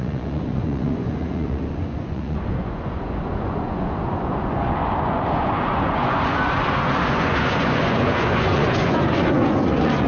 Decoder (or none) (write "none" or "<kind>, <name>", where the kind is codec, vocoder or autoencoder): vocoder, Vocos